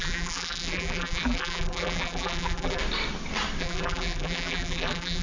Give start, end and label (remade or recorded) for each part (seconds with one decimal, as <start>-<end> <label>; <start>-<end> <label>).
0.0-2.8 remade; 2.8-3.6 recorded; 3.6-5.2 remade